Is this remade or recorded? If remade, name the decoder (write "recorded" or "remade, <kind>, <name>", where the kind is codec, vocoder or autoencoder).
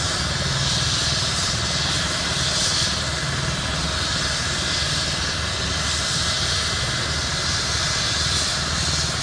recorded